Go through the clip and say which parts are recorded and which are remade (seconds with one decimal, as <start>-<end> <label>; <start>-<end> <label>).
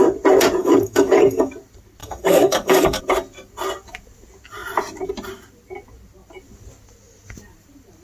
0.0-0.6 recorded; 0.6-1.5 remade; 1.5-2.0 recorded; 2.0-3.0 remade; 3.0-8.0 recorded